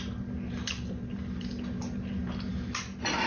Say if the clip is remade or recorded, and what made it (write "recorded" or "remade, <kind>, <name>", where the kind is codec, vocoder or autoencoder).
recorded